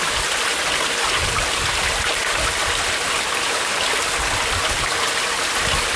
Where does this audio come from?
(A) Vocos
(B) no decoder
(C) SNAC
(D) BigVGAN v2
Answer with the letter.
B